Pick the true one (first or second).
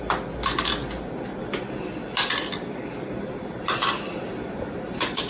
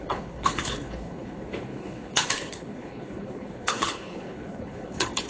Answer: first